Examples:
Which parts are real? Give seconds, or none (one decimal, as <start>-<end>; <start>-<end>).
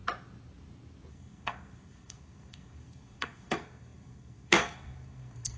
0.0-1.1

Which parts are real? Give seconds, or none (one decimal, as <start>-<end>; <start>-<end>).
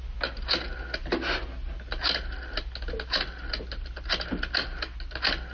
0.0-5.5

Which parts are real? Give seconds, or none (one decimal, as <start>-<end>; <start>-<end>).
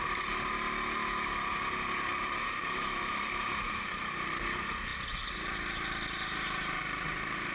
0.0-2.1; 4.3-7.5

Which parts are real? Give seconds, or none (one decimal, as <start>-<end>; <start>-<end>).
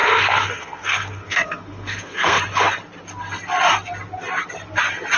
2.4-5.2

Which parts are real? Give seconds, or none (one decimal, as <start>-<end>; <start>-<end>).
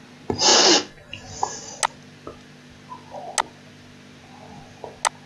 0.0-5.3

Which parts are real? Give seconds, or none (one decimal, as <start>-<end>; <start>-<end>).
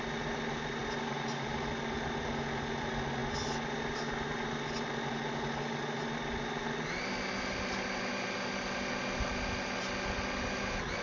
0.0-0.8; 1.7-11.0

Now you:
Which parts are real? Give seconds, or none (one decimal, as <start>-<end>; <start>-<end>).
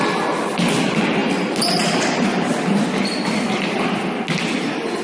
0.0-5.0